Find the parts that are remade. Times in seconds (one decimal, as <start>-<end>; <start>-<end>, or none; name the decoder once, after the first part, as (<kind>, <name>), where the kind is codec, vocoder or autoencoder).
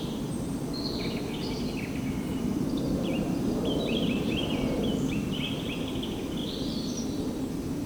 2.3-5.7 (vocoder, BigVGAN v2); 6.4-7.5